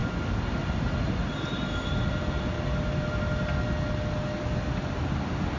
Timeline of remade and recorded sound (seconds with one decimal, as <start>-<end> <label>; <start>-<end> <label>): 0.0-5.6 recorded